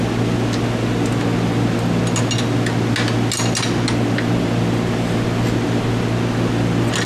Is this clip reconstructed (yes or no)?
no